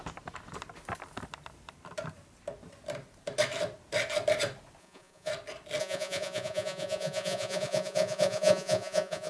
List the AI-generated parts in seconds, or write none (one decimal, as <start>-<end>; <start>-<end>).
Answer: 4.8-5.3; 5.8-9.3